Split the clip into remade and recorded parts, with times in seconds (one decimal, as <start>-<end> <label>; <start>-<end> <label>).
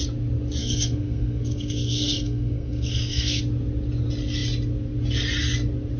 0.0-0.6 recorded; 0.6-3.4 remade; 3.4-6.0 recorded